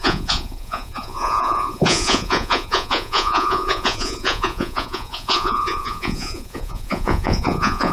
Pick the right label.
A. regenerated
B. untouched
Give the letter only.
A